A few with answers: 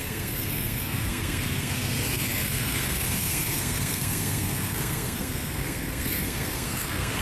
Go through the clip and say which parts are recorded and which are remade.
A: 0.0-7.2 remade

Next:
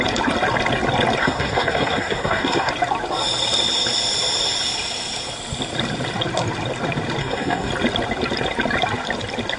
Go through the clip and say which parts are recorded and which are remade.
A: 0.0-1.2 recorded; 1.2-2.7 remade; 2.7-7.2 recorded; 7.2-7.7 remade; 7.7-9.6 recorded

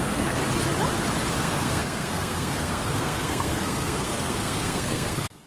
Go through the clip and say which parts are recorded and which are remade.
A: 0.0-0.4 remade; 0.4-1.4 recorded; 1.4-5.5 remade

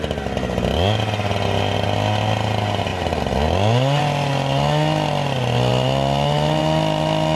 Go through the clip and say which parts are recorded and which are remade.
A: 0.0-7.4 recorded

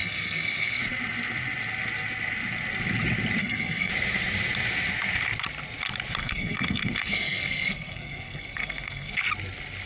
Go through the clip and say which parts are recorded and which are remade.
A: 0.0-0.8 remade; 0.8-3.4 recorded; 3.4-3.9 remade; 3.9-6.2 recorded; 6.2-9.2 remade; 9.2-9.9 recorded

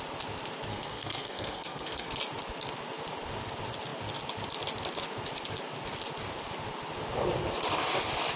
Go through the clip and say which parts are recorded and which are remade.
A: 0.0-0.7 recorded; 0.7-2.2 remade; 2.2-8.4 recorded

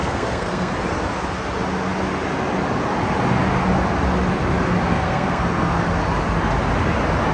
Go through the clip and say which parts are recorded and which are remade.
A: 0.0-0.7 remade; 0.7-4.9 recorded; 4.9-5.8 remade; 5.8-7.3 recorded